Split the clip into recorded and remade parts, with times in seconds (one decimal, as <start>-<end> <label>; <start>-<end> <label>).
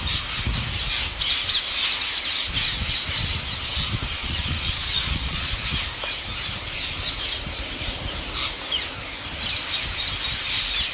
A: 0.0-4.2 recorded; 4.2-5.5 remade; 5.5-10.9 recorded